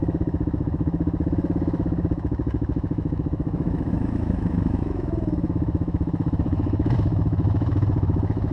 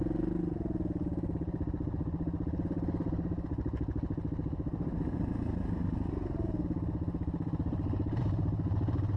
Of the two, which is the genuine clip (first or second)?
second